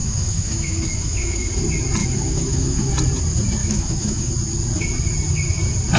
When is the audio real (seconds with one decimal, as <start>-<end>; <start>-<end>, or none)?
1.5-2.0; 2.9-3.6; 4.3-6.0